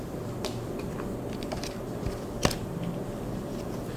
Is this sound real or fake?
fake